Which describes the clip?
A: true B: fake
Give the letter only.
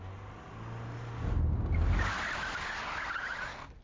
A